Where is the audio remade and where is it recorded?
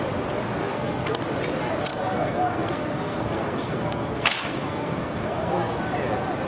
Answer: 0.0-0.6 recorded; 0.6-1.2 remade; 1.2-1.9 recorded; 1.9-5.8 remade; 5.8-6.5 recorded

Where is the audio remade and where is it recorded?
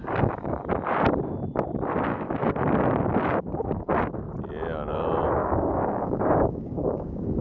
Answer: 0.0-0.7 remade; 0.7-2.1 recorded; 2.1-2.7 remade; 2.7-5.4 recorded; 5.4-7.4 remade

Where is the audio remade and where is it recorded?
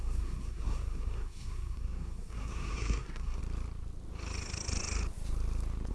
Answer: 0.0-3.4 remade; 3.4-5.9 recorded